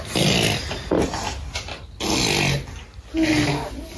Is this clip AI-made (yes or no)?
no